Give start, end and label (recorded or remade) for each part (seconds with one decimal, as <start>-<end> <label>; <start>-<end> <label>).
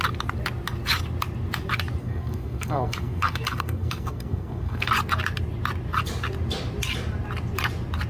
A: 0.0-2.0 recorded; 2.0-4.9 remade; 4.9-8.1 recorded